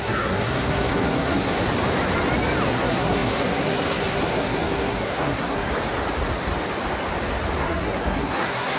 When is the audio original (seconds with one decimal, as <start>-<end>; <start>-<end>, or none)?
1.6-2.7; 5.7-7.6